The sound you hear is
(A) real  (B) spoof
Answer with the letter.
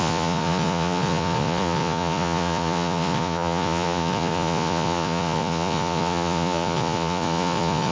B